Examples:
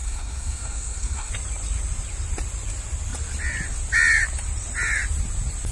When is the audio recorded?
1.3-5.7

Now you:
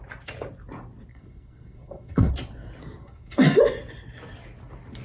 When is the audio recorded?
0.0-1.1; 2.3-3.0; 3.6-5.0